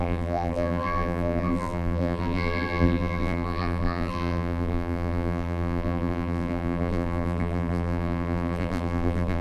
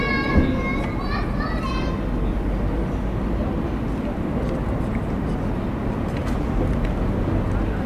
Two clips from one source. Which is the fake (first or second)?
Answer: first